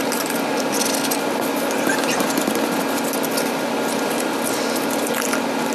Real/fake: real